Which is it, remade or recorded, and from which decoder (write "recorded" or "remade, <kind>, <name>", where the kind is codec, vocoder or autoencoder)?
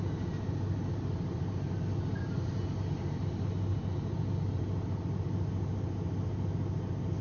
recorded